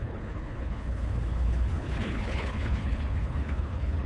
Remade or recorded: remade